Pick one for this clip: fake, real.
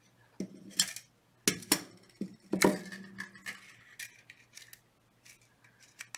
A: real